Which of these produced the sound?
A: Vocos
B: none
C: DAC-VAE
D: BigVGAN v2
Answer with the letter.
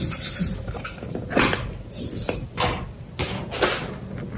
B